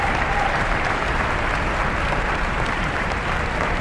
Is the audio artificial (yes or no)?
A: yes